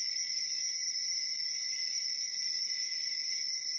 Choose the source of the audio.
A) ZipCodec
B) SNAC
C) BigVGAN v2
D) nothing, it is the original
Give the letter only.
D